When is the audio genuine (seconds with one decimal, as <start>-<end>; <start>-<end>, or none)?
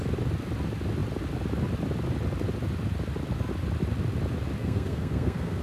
0.0-4.6